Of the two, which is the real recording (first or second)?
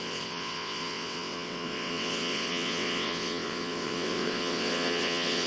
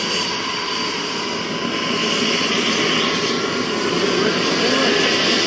second